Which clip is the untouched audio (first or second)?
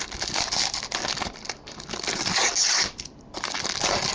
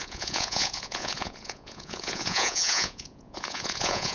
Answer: first